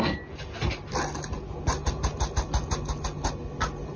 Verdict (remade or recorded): recorded